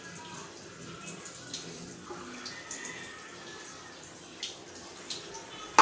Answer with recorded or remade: recorded